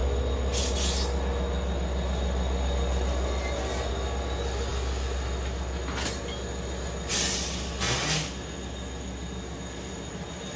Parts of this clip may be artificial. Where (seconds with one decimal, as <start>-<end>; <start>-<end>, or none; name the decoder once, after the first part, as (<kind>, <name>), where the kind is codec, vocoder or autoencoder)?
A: none